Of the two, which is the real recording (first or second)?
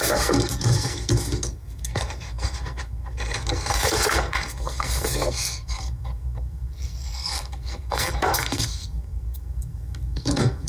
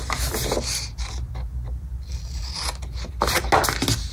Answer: second